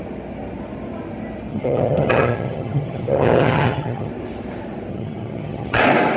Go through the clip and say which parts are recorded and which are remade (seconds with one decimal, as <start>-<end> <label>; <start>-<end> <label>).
0.0-1.5 recorded; 1.5-4.1 remade; 4.1-4.9 recorded; 4.9-5.8 remade; 5.8-6.2 recorded